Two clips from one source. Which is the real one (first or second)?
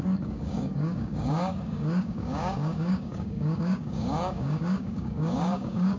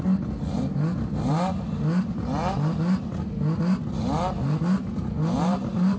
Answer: second